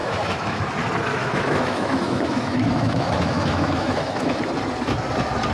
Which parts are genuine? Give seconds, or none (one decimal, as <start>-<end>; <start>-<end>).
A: 0.6-1.1; 4.4-5.5

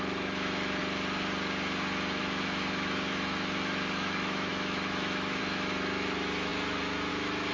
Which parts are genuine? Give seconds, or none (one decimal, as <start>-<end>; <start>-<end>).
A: 0.8-2.2

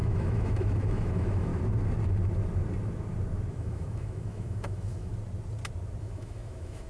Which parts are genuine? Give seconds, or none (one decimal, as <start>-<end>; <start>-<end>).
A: 1.5-3.5; 5.1-6.0

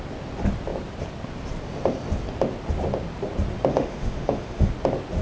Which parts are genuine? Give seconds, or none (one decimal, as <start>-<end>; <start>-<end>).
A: 0.0-3.7; 4.7-5.2

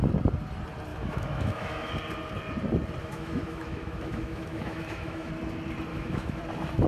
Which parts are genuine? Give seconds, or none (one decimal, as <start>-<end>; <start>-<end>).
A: 0.0-0.9; 1.9-3.0; 5.3-5.9; 6.4-6.9

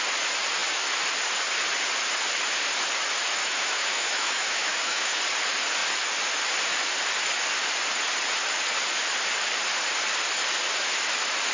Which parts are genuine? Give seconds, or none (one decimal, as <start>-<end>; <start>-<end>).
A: 0.0-3.4; 5.2-11.5

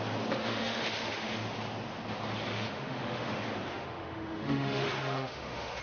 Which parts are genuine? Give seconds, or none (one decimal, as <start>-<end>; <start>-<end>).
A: 0.0-0.4; 1.3-2.5; 3.3-3.7

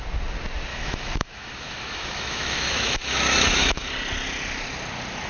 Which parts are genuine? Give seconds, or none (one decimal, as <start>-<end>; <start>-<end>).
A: 0.0-0.7; 3.9-5.3